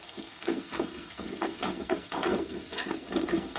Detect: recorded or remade remade